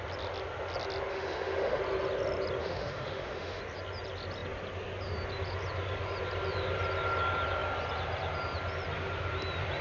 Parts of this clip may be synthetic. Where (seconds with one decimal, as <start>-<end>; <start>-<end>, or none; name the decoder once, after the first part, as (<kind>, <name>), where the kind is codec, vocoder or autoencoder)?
1.1-1.8 (autoencoder, DAC-VAE); 2.6-3.6